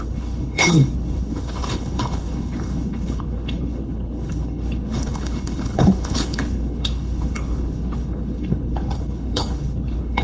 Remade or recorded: remade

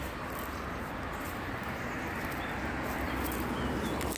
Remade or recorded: recorded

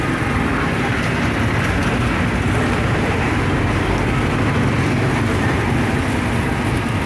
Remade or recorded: recorded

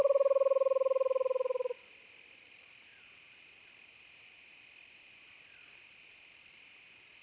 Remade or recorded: recorded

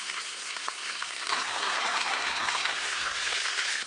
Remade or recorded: remade